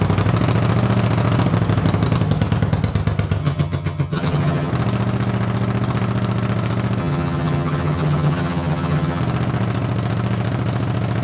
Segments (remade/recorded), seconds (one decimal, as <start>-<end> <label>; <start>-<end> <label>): 0.0-3.4 recorded; 3.4-4.7 remade; 4.7-7.0 recorded; 7.0-9.2 remade; 9.2-11.2 recorded